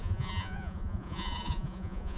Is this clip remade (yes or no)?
yes